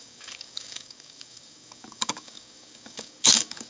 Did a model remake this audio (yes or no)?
yes